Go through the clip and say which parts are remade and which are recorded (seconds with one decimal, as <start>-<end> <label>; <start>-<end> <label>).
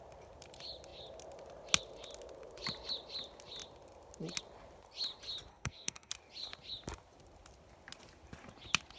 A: 0.0-5.5 recorded; 5.5-6.1 remade; 6.1-9.0 recorded